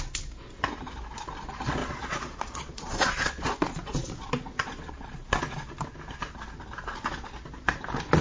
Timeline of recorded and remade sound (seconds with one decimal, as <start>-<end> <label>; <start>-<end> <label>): 0.0-1.8 recorded; 1.8-5.4 remade; 5.4-8.2 recorded